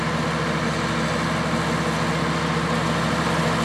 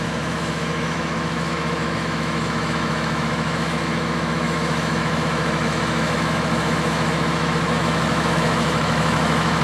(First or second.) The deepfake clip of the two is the second